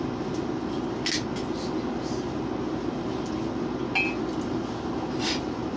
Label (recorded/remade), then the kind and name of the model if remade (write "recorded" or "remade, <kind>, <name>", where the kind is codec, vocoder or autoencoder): recorded